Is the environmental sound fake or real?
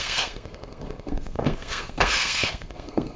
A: fake